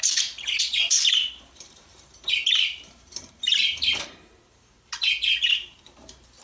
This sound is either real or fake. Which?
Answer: fake